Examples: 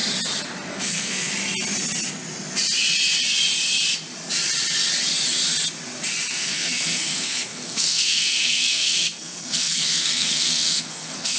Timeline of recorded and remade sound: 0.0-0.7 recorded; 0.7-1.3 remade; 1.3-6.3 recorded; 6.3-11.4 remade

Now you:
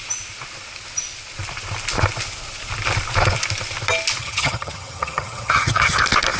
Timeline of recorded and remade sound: 0.0-4.2 recorded; 4.2-6.0 remade; 6.0-6.4 recorded

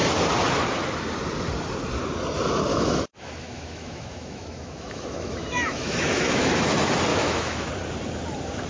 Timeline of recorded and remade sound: 0.0-2.7 recorded; 2.7-6.5 remade; 6.5-7.1 recorded; 7.1-7.7 remade; 7.7-8.7 recorded

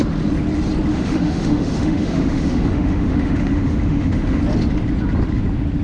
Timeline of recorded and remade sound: 0.0-0.9 recorded; 0.9-4.4 remade; 4.4-5.8 recorded

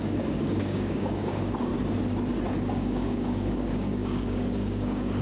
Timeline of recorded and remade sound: 0.0-1.7 remade; 1.7-2.5 recorded; 2.5-5.2 remade

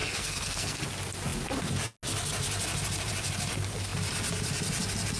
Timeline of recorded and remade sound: 0.0-0.8 remade; 0.8-5.2 recorded